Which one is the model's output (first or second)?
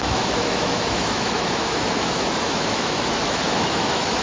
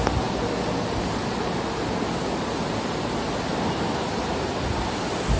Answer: first